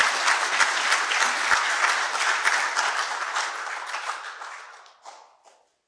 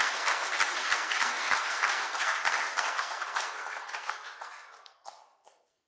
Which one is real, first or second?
first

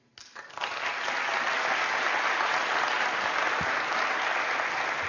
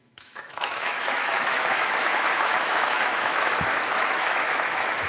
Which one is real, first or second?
first